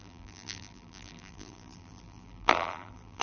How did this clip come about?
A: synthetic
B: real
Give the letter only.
A